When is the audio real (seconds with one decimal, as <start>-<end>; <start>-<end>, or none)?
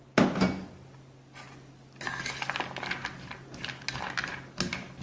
0.0-5.0